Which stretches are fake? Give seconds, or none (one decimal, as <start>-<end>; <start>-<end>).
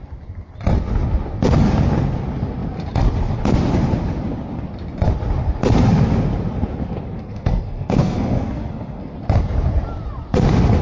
7.2-9.1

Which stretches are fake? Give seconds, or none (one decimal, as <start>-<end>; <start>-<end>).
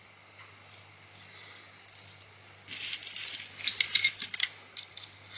none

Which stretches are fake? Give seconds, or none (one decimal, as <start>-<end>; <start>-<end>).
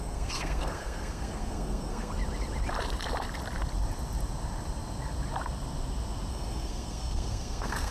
0.0-2.1; 6.3-7.9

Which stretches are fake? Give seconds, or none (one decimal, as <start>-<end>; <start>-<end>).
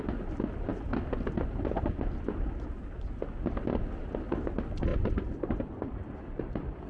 4.9-6.5